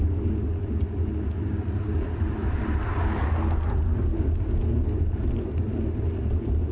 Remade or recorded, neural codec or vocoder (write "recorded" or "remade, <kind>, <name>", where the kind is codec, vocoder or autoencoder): recorded